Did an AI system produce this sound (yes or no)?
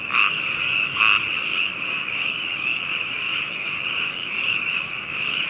yes